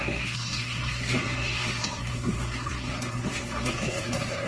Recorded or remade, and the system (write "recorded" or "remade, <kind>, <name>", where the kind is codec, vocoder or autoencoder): remade, codec, SNAC